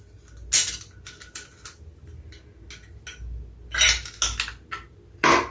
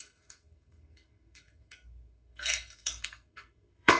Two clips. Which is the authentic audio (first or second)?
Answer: first